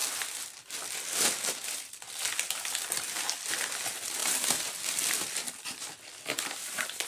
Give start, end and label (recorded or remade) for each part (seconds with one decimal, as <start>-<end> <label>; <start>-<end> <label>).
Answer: 0.0-7.1 recorded